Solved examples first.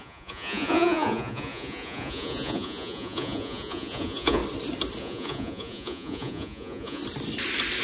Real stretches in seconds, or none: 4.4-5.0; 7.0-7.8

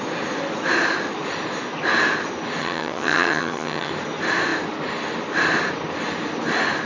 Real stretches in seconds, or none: 0.0-2.6; 3.9-6.9